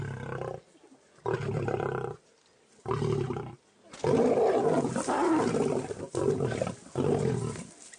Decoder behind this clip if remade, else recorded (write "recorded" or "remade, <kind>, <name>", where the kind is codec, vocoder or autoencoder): recorded